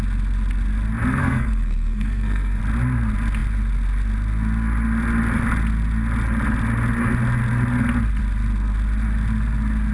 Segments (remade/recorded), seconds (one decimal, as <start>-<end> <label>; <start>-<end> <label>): 0.0-1.2 recorded; 1.2-2.6 remade; 2.6-9.9 recorded